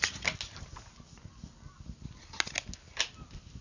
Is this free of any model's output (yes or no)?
yes